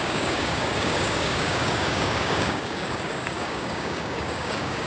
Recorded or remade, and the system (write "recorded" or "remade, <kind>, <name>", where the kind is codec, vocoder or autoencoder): remade, codec, DAC